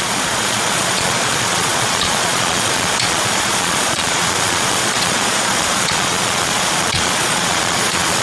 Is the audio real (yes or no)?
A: no